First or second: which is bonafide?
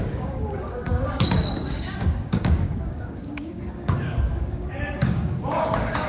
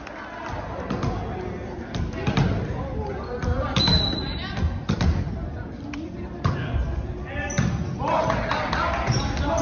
second